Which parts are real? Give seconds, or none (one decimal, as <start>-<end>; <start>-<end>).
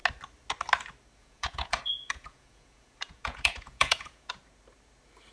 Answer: 0.0-1.2; 4.4-5.3